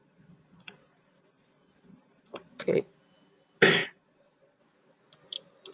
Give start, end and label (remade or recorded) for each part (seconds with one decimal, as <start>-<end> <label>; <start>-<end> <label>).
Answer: 0.0-2.9 remade; 2.9-3.8 recorded; 3.8-4.6 remade; 4.6-5.7 recorded

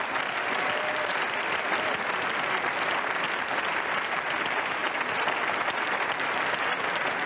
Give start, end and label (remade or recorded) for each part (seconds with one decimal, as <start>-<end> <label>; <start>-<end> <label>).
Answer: 0.0-7.3 recorded